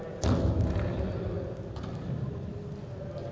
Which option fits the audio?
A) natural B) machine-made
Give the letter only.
A